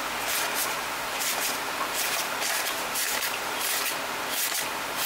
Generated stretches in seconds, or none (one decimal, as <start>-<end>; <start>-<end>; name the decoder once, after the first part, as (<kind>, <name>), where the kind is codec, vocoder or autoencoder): 0.6-3.7 (vocoder, BigVGAN v2)